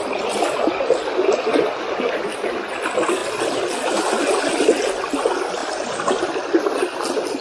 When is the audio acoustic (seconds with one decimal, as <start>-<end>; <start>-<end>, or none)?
0.0-7.4